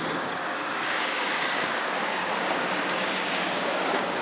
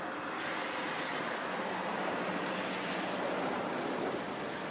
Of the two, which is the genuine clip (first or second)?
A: second